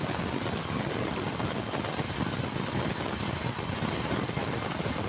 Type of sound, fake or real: real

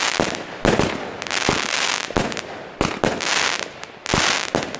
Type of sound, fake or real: real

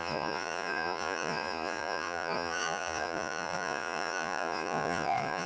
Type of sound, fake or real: fake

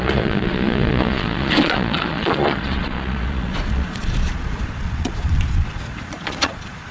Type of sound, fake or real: fake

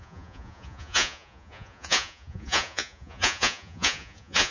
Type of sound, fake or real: fake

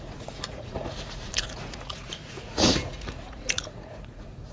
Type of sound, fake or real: fake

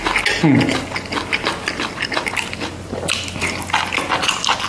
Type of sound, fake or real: real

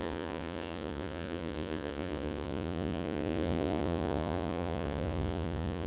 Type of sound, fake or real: fake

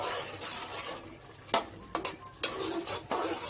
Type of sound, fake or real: real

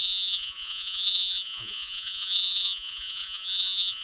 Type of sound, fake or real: fake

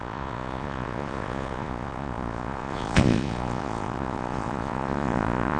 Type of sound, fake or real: fake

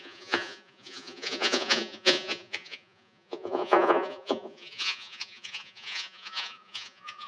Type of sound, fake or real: fake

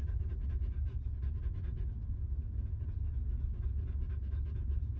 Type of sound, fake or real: real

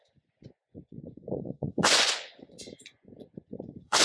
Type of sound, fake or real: fake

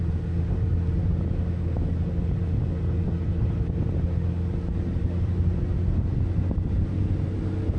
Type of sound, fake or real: real